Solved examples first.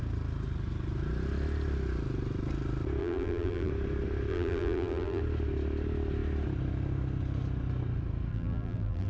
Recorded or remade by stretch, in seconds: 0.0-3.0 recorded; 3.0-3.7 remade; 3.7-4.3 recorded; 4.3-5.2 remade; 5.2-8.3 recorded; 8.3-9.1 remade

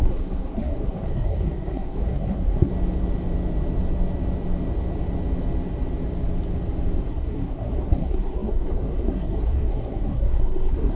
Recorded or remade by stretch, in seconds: 0.0-2.7 remade; 2.7-7.1 recorded; 7.1-11.0 remade

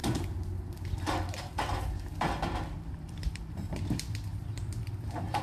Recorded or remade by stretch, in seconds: 0.0-2.9 recorded; 2.9-5.4 remade

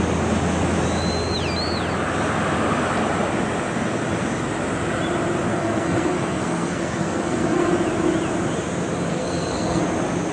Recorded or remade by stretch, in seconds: 0.0-5.5 recorded; 5.5-7.7 remade; 7.7-9.1 recorded; 9.1-9.8 remade; 9.8-10.3 recorded